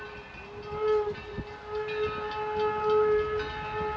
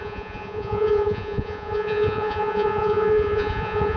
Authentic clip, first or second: first